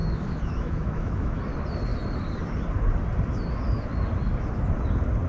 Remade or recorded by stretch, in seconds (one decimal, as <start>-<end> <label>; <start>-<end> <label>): 0.0-1.4 remade; 1.4-5.3 recorded